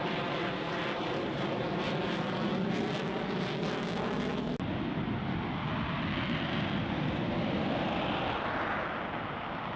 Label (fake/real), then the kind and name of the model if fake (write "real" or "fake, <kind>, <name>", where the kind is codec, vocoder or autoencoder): real